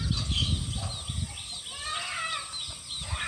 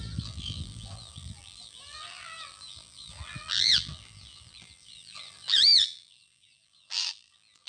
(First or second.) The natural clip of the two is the first